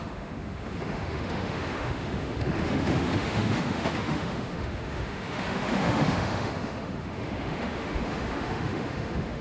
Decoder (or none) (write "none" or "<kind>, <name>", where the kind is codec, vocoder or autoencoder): autoencoder, DAC-VAE